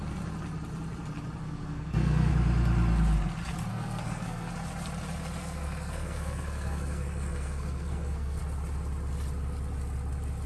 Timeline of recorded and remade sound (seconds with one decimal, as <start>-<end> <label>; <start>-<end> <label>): 0.0-1.4 recorded; 1.4-2.3 remade; 2.3-3.7 recorded; 3.7-4.5 remade; 4.5-5.4 recorded; 5.4-8.4 remade; 8.4-10.5 recorded